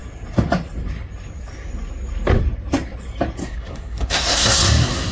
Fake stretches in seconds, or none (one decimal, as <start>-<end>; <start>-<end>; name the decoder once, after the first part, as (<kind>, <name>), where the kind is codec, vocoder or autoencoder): 3.4-5.1 (codec, SNAC)